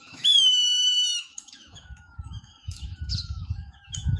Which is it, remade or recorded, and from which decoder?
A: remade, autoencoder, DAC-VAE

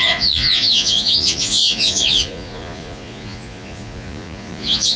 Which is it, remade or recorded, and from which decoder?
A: remade, vocoder, Vocos